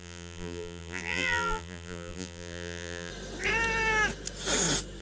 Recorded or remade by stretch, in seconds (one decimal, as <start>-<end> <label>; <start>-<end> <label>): 0.0-3.1 remade; 3.1-5.0 recorded